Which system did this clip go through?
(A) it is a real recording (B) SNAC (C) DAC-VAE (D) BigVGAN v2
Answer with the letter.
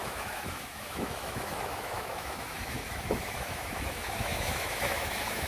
C